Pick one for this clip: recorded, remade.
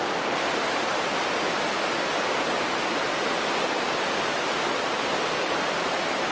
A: recorded